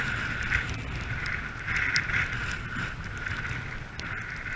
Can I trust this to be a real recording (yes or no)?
yes